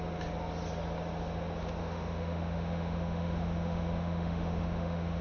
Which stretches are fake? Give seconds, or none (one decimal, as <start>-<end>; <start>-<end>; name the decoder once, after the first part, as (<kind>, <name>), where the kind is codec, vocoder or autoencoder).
1.8-5.2 (autoencoder, DAC-VAE)